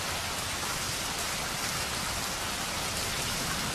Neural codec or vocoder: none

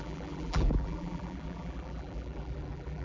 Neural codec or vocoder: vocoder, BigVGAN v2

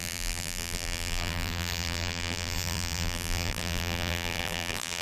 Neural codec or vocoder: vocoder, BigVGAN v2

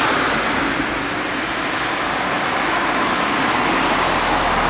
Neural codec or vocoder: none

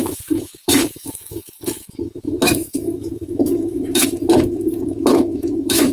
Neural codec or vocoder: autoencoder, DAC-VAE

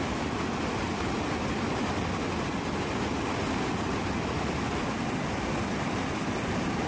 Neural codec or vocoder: none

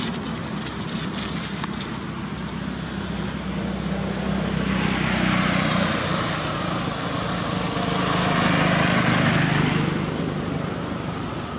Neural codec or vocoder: none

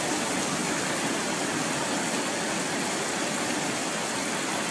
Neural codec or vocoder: none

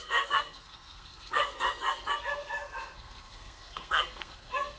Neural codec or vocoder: codec, SNAC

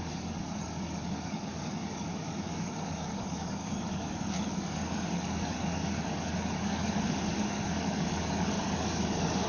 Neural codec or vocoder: codec, DAC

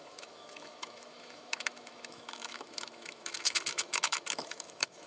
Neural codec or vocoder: autoencoder, DAC-VAE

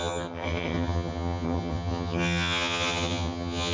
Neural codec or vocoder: vocoder, HiFi-GAN